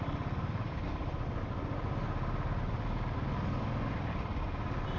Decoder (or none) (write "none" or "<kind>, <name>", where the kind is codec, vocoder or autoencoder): none